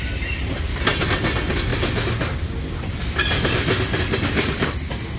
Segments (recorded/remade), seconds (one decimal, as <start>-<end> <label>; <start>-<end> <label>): 0.0-5.2 recorded